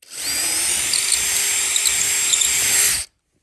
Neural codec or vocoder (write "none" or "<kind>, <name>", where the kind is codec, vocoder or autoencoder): none